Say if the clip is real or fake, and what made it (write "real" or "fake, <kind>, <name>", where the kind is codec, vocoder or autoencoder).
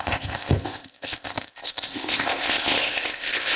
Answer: fake, codec, ZipCodec